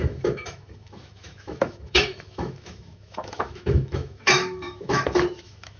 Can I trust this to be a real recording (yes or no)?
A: no